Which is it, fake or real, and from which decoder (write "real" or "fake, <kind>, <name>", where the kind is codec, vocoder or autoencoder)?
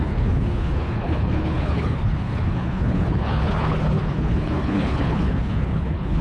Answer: fake, codec, HILCodec